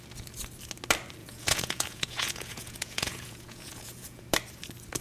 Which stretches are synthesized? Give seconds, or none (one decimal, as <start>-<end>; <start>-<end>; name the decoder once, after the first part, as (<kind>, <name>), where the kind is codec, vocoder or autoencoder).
1.2-4.2 (vocoder, Vocos)